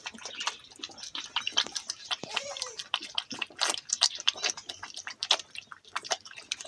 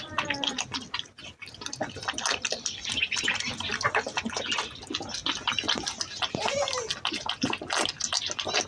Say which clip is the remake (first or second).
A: first